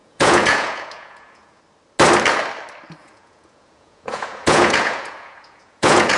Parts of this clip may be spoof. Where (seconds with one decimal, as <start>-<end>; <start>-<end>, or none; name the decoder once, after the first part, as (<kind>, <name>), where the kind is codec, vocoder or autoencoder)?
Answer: 0.0-1.6 (vocoder, Vocos); 3.0-6.2